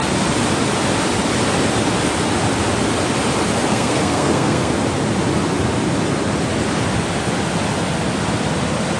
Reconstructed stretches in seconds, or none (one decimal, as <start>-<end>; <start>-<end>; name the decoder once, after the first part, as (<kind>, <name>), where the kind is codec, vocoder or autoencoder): 3.7-4.7 (codec, SNAC)